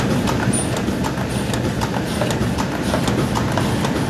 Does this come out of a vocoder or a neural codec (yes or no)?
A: no